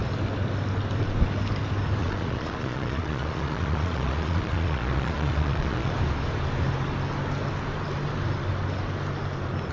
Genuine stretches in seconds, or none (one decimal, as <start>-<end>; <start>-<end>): 0.0-2.0; 5.9-9.7